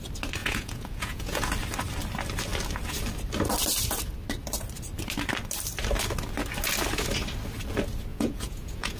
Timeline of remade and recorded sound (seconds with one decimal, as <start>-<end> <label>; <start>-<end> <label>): 0.0-0.4 recorded; 0.4-1.5 remade; 1.5-8.1 recorded; 8.1-9.0 remade